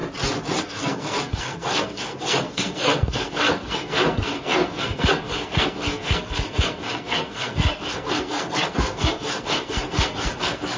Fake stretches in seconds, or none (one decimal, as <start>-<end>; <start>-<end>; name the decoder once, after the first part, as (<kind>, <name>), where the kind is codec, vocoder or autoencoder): 0.6-10.8 (codec, SNAC)